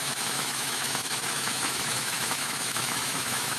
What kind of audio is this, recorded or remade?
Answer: remade